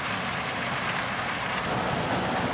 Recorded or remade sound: recorded